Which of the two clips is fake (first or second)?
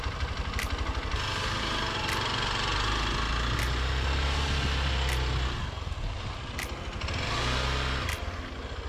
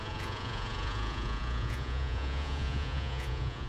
second